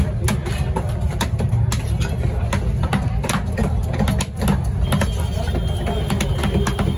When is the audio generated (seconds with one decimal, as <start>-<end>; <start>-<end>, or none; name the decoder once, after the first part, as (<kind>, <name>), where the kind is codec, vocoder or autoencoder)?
none